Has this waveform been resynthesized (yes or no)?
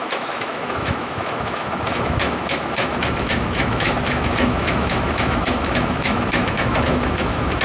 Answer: yes